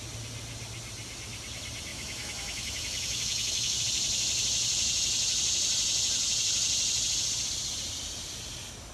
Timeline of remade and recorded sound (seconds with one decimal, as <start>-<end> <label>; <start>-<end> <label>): 0.0-1.9 recorded; 1.9-3.8 remade; 3.8-8.9 recorded